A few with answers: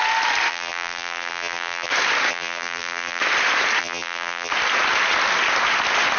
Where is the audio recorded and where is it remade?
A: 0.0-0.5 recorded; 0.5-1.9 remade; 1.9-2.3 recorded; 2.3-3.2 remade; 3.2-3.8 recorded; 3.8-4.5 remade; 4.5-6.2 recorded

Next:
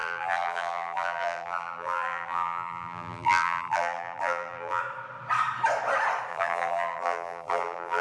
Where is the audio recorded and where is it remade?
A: 0.0-4.8 remade; 4.8-6.3 recorded; 6.3-8.0 remade

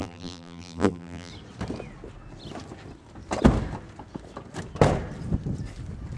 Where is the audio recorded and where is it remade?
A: 0.0-1.3 remade; 1.3-6.2 recorded

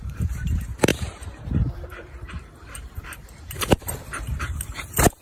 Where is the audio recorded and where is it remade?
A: 0.0-5.2 remade

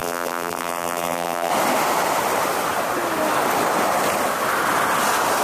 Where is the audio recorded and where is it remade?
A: 0.0-1.5 remade; 1.5-5.4 recorded

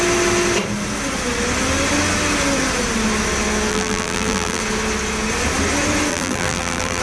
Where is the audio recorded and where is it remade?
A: 0.0-3.7 recorded; 3.7-4.6 remade; 4.6-6.1 recorded; 6.1-7.0 remade